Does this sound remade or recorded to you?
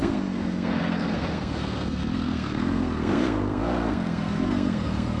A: remade